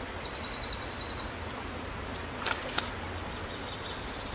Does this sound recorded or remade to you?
recorded